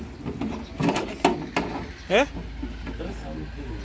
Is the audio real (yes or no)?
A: yes